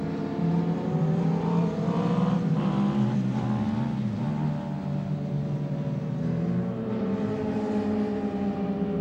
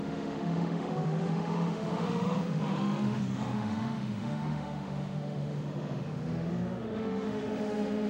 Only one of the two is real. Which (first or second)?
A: first